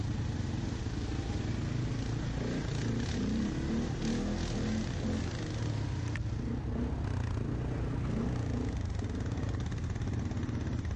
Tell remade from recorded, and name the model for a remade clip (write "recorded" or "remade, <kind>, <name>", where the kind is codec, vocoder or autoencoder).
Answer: recorded